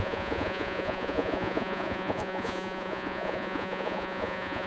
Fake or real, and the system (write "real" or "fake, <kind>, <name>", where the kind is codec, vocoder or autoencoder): fake, vocoder, Vocos